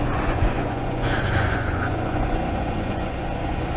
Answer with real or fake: fake